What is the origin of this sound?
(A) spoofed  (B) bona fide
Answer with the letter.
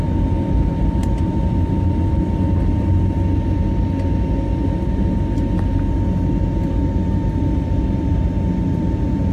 B